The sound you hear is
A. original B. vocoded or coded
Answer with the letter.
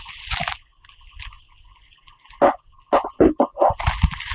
A